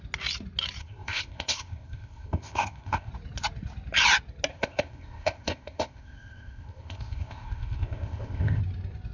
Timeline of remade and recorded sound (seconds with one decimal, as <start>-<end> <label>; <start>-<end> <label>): 0.0-0.8 recorded; 0.8-3.1 remade; 3.1-4.5 recorded; 4.5-8.6 remade; 8.6-9.1 recorded